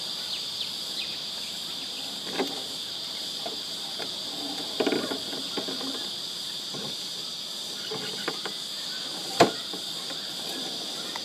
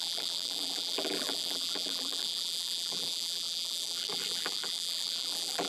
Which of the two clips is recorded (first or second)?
first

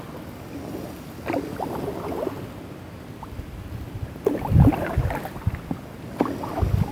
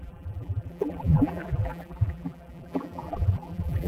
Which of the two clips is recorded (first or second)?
first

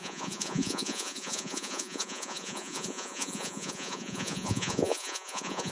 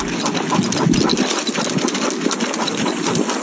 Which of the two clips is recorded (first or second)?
second